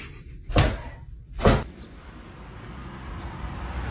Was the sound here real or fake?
real